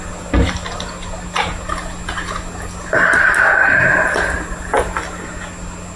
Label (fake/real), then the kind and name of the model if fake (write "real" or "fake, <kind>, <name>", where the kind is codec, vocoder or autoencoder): real